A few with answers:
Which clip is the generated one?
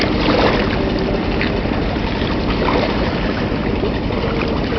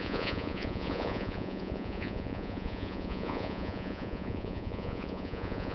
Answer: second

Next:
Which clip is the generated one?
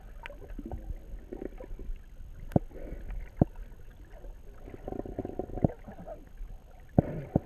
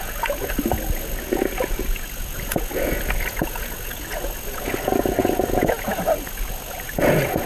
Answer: second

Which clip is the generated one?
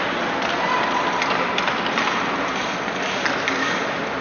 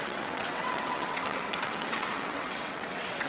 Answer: second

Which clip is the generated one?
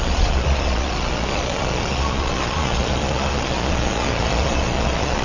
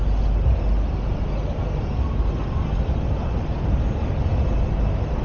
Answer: first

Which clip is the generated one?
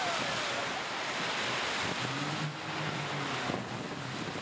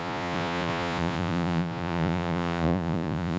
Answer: second